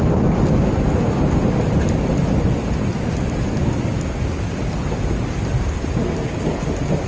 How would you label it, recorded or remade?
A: recorded